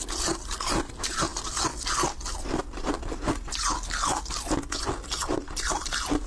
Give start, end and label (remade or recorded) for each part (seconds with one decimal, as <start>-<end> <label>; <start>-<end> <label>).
0.0-6.3 recorded